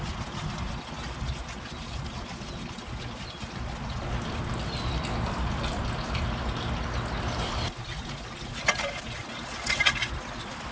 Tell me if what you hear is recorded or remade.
recorded